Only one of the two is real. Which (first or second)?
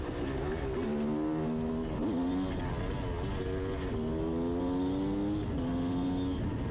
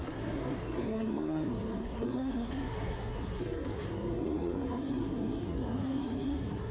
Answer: first